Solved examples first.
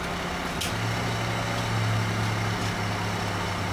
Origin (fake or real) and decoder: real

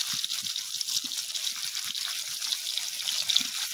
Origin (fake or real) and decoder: real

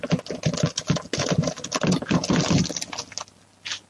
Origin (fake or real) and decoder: real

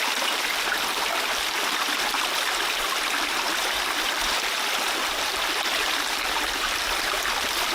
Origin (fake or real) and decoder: fake, vocoder, BigVGAN v2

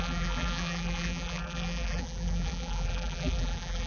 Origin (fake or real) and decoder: fake, vocoder, BigVGAN v2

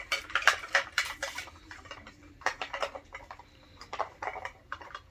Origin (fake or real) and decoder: fake, vocoder, BigVGAN v2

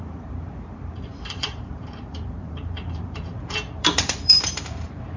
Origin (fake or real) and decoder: fake, vocoder, BigVGAN v2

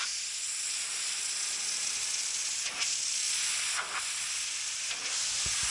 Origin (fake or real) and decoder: real